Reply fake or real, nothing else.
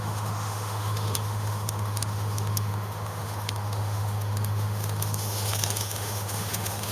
fake